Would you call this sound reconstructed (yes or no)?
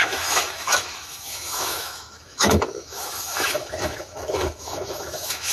yes